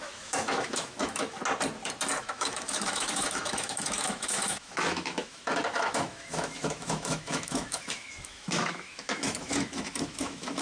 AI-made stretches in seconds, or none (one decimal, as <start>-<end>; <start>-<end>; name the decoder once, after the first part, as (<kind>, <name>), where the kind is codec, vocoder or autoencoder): 0.0-1.4 (autoencoder, DAC-VAE); 2.2-10.6

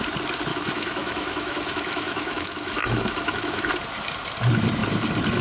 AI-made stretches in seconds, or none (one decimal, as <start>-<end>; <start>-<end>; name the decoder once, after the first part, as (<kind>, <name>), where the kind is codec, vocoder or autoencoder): 0.5-3.7 (autoencoder, DAC-VAE)

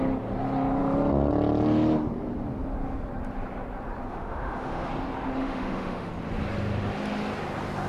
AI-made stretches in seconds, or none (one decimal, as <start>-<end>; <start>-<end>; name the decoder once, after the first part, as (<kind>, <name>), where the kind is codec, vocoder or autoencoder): 4.1-4.9 (autoencoder, DAC-VAE); 5.4-6.1

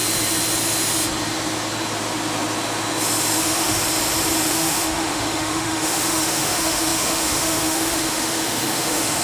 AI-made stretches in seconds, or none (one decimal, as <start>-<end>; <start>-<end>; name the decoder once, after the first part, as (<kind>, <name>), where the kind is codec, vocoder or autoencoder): 3.4-3.8 (autoencoder, DAC-VAE); 4.5-9.2

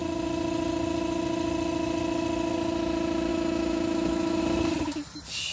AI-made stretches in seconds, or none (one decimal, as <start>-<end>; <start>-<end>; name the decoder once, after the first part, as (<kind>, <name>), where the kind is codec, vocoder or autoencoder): 3.3-4.4 (autoencoder, DAC-VAE)